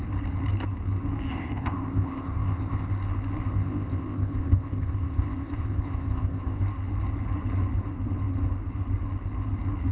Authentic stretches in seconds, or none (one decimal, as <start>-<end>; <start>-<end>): 0.0-1.3; 2.9-3.5; 6.6-9.9